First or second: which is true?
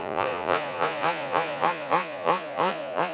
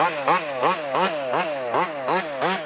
second